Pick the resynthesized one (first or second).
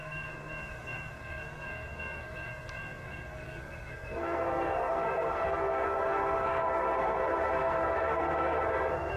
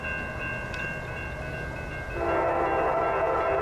first